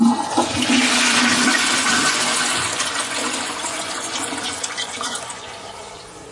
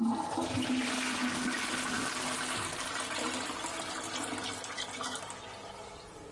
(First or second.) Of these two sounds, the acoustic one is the second